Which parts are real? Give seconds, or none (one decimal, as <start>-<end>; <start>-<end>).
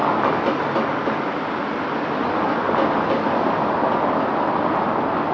0.0-5.3